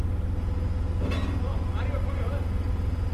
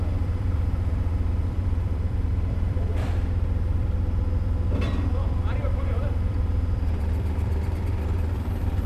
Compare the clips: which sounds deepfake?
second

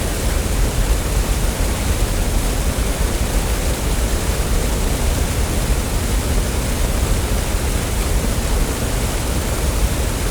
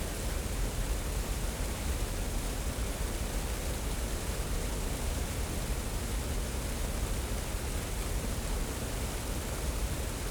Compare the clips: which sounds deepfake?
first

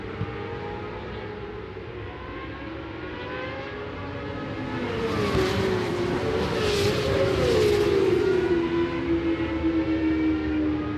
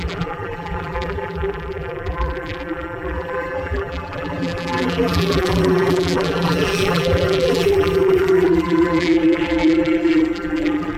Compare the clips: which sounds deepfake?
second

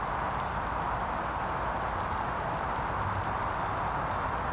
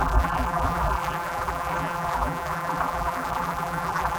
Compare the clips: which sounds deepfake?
second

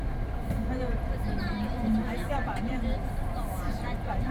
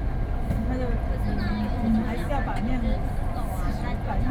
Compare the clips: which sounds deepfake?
first